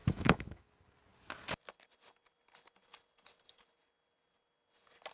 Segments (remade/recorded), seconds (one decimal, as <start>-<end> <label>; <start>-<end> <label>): 0.0-0.7 remade; 0.7-5.1 recorded